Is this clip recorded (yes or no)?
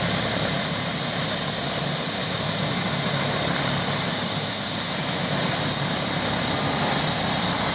yes